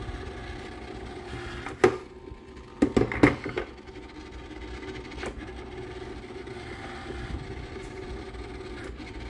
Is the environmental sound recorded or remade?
recorded